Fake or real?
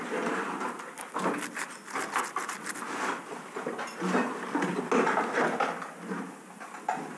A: real